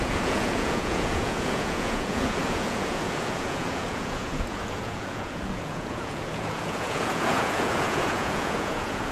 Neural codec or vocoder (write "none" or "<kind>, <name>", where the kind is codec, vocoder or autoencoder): vocoder, Vocos